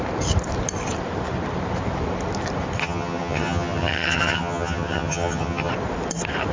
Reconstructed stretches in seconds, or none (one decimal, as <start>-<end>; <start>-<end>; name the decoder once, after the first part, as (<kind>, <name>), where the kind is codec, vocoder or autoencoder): 2.8-5.7 (vocoder, HiFi-GAN)